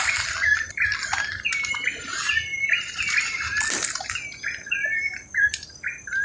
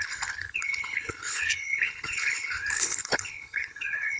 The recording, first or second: first